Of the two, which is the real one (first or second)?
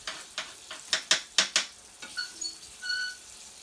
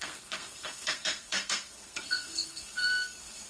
first